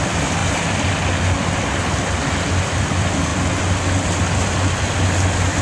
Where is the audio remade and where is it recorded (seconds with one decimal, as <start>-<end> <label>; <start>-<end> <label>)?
0.0-0.4 remade; 0.4-2.4 recorded; 2.4-3.3 remade; 3.3-4.7 recorded; 4.7-5.6 remade